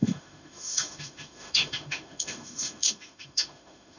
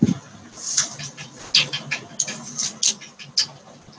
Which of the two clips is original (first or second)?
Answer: second